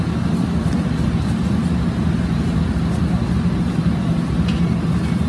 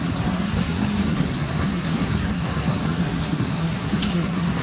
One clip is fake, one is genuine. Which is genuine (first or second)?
first